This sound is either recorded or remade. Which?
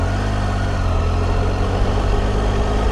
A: recorded